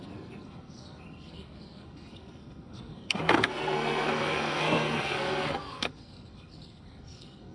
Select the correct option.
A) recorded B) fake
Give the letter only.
B